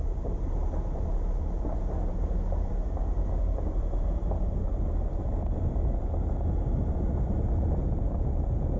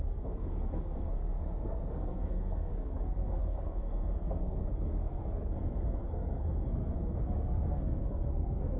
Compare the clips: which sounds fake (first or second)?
second